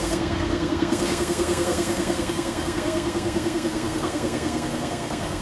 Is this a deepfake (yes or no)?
yes